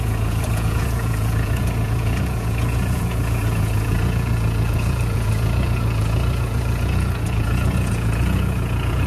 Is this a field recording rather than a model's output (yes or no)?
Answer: no